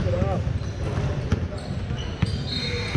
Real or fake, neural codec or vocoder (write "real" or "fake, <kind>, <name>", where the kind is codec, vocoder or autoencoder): real